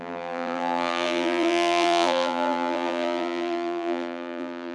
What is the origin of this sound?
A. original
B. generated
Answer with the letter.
B